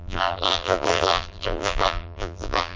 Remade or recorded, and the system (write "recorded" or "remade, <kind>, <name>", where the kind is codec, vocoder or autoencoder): remade, vocoder, BigVGAN v2